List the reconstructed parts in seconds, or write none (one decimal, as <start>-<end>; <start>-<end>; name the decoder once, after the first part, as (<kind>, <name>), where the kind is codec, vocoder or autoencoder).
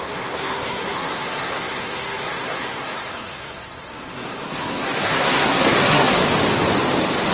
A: 0.0-6.2 (codec, SNAC)